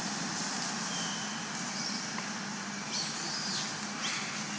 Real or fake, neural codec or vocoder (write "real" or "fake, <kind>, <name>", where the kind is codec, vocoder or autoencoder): real